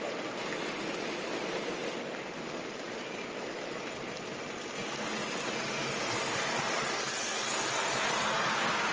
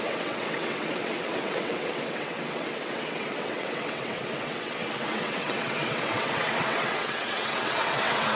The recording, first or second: first